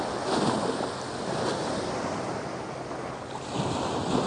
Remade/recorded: recorded